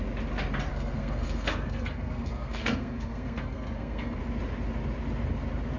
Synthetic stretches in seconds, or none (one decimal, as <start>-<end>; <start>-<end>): 0.7-4.2